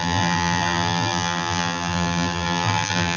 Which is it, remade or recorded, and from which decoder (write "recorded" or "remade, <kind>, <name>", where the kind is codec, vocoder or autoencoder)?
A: remade, vocoder, BigVGAN v2